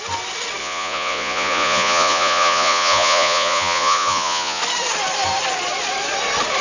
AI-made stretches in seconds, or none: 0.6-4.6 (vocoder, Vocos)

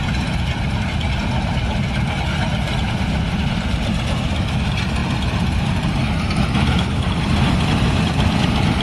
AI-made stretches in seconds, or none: none